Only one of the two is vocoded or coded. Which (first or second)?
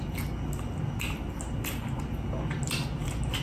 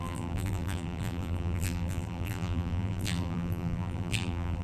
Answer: second